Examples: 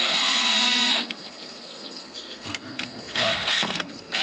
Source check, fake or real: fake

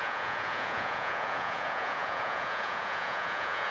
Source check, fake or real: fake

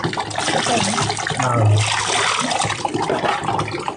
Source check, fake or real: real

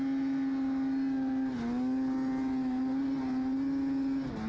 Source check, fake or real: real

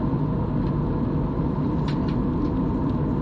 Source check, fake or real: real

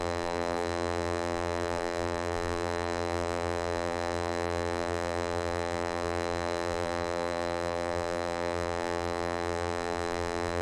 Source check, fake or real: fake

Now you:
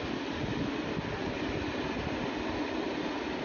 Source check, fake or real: real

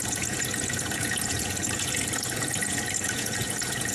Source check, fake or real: fake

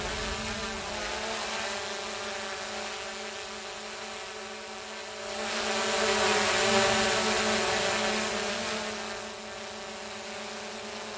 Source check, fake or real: real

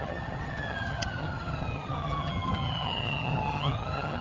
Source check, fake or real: fake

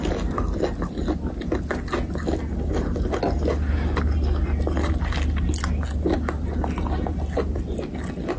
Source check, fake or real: real